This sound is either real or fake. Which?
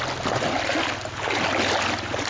real